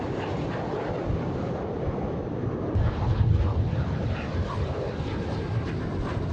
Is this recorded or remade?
recorded